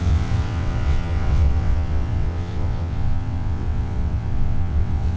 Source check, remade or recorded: remade